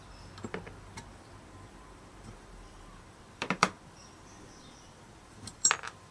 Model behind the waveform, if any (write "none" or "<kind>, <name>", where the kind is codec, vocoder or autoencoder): vocoder, BigVGAN v2